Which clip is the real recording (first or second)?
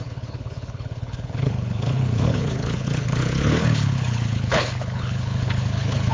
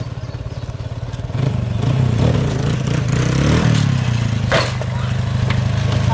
second